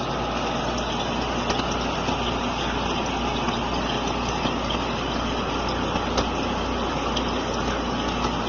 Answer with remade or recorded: recorded